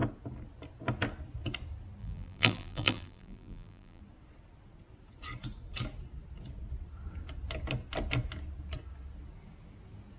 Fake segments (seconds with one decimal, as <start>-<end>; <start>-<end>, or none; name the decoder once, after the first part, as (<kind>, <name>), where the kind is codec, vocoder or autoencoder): 2.0-4.0 (vocoder, BigVGAN v2)